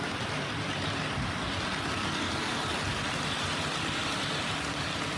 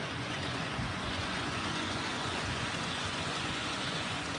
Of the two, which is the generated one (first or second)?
second